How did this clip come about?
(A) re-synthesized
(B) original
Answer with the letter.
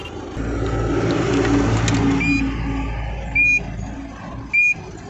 B